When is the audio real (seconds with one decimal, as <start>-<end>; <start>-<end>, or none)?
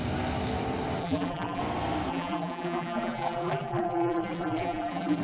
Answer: 0.0-1.0; 1.6-2.1